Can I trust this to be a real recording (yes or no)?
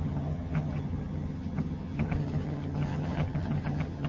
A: no